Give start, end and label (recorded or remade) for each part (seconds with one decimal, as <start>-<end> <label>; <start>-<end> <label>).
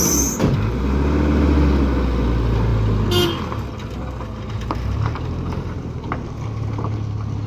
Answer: 0.0-7.5 recorded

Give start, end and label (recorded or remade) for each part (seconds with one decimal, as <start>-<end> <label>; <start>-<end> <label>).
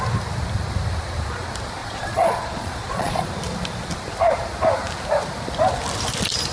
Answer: 0.0-1.8 recorded; 1.8-3.3 remade; 3.3-6.5 recorded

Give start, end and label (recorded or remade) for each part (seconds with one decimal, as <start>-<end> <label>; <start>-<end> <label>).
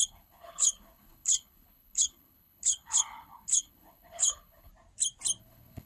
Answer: 0.0-4.7 remade; 4.7-5.4 recorded; 5.4-5.9 remade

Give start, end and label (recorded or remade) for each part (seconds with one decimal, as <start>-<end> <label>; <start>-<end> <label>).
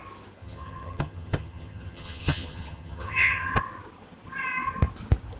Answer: 0.0-0.4 recorded; 0.4-3.6 remade; 3.6-5.4 recorded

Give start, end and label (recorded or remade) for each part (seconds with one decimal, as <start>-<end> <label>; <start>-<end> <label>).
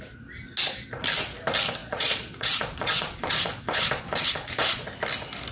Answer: 0.0-1.8 recorded; 1.8-4.9 remade; 4.9-5.5 recorded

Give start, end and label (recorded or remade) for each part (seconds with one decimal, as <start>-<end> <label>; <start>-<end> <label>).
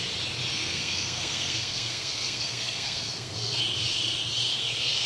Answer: 0.0-0.5 recorded; 0.5-3.6 remade; 3.6-4.5 recorded; 4.5-5.1 remade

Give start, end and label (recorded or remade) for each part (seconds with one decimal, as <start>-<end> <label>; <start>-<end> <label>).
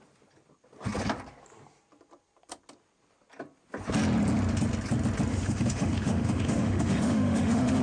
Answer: 0.0-5.3 recorded; 5.3-7.8 remade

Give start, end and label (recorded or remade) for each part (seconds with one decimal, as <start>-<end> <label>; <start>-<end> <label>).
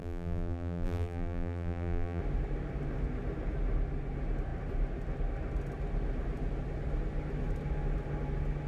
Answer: 0.0-2.2 remade; 2.2-8.7 recorded